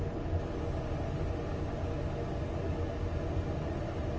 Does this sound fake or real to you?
real